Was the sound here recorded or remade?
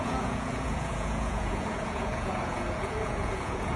remade